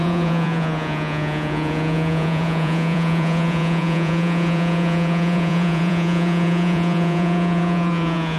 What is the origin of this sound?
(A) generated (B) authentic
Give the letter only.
A